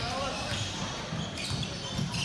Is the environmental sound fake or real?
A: real